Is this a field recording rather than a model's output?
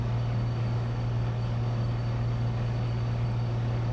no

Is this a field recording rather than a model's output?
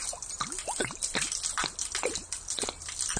yes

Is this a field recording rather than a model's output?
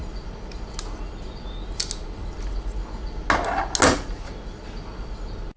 yes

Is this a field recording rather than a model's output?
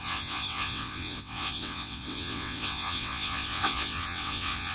no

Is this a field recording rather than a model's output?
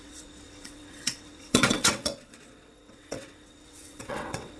no